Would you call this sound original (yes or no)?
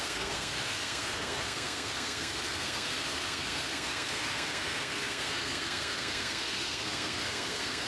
no